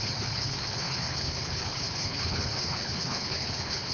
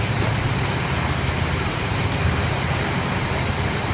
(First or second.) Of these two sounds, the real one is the second